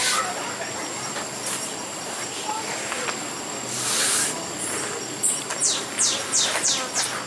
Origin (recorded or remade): recorded